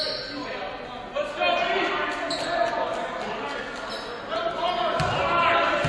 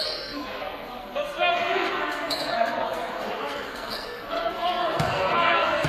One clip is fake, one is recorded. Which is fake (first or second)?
second